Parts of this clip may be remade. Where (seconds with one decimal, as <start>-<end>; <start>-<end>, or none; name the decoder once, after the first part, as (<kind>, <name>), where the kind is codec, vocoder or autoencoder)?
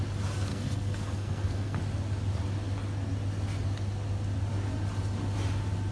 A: 0.5-1.8 (codec, SNAC)